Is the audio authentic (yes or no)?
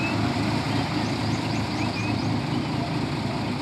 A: yes